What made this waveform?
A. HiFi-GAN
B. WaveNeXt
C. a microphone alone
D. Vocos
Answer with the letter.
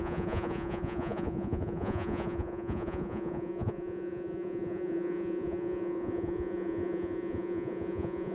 D